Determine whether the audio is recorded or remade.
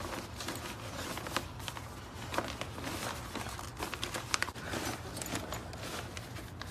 recorded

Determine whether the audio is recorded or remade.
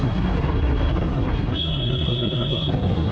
remade